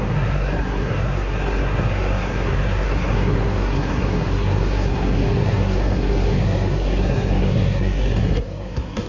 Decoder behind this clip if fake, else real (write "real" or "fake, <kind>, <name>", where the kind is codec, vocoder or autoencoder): fake, codec, SNAC